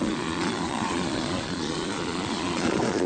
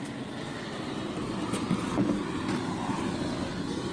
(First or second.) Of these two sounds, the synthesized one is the first